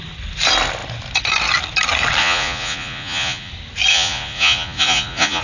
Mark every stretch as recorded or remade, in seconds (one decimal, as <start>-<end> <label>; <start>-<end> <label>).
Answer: 0.0-2.2 recorded; 2.2-3.5 remade; 3.5-3.9 recorded; 3.9-5.4 remade